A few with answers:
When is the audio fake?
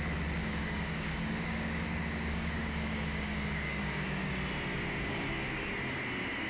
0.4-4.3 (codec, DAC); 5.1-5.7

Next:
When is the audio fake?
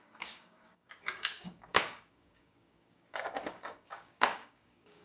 0.0-5.0 (codec, DAC)